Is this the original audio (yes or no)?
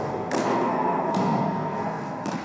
no